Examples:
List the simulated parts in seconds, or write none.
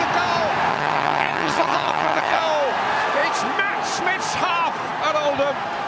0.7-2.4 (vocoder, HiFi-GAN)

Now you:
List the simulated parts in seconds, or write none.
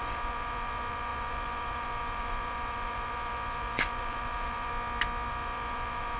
0.0-4.7 (vocoder, Vocos); 5.3-6.2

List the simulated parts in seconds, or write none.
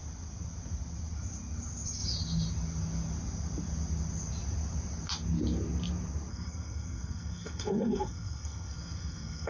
6.3-9.5 (codec, SNAC)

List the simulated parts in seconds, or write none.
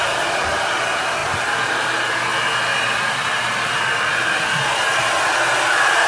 none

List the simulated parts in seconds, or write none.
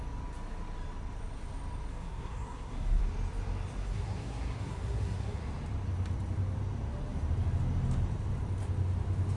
1.9-3.0 (codec, SNAC); 3.8-5.4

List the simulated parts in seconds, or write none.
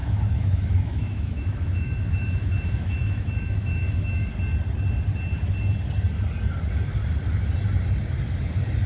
0.0-4.3 (autoencoder, DAC-VAE)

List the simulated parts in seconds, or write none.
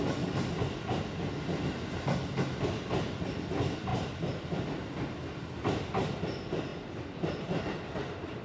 3.9-6.2 (vocoder, BigVGAN v2)